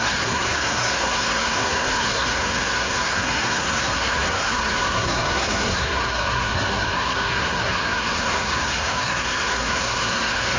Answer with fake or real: fake